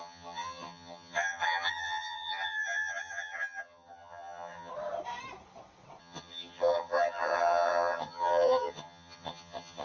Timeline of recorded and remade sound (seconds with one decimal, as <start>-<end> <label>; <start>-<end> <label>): 0.0-4.7 remade; 4.7-6.0 recorded; 6.0-9.8 remade